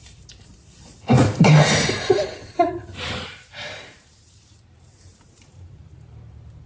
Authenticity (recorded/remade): remade